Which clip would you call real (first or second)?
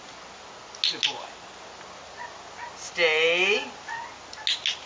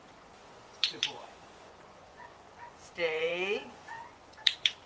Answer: first